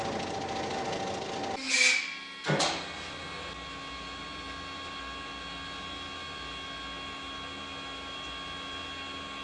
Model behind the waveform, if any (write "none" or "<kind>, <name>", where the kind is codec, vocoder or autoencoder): none